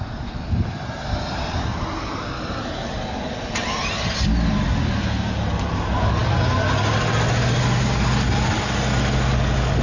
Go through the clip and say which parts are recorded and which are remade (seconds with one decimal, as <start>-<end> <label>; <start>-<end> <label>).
0.0-9.8 recorded